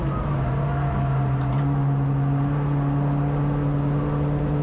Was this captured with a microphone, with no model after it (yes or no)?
yes